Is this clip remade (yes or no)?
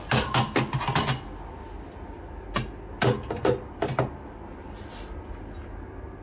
no